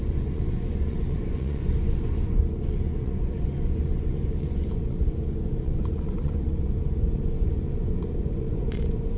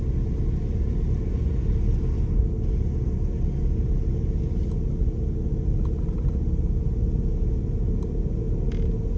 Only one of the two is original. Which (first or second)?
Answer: second